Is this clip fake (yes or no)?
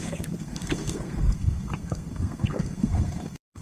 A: yes